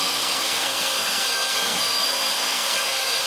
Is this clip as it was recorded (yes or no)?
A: no